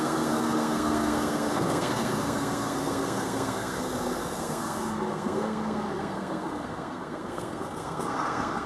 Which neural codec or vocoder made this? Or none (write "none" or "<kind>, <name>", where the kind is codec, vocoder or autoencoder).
codec, SNAC